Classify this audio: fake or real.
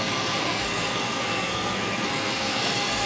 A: fake